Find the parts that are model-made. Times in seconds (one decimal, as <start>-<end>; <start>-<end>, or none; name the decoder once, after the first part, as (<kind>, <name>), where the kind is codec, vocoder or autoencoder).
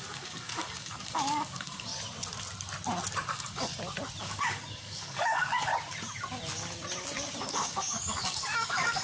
0.0-1.9 (codec, DAC); 3.3-3.7; 4.2-5.7; 7.5-9.0